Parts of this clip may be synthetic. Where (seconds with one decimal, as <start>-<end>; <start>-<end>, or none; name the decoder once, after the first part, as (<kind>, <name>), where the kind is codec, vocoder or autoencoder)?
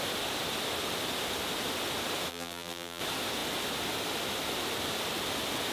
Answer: 2.3-3.0 (vocoder, BigVGAN v2)